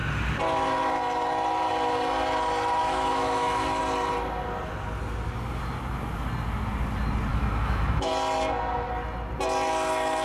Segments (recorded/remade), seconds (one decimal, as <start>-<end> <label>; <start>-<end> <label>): 0.0-2.8 recorded; 2.8-3.8 remade; 3.8-7.3 recorded; 7.3-8.1 remade; 8.1-10.2 recorded